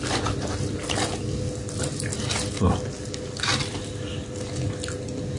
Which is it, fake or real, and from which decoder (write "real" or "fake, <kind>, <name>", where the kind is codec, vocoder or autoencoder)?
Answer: real